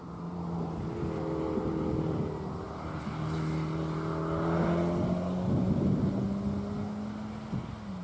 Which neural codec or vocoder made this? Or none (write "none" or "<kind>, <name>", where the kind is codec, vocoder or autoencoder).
none